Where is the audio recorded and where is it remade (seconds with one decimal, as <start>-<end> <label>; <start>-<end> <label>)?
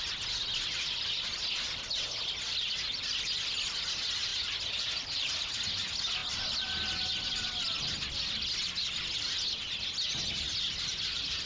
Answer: 0.0-11.5 recorded